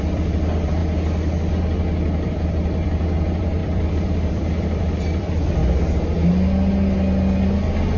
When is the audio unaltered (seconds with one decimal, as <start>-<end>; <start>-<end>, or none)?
0.8-1.5; 5.6-8.0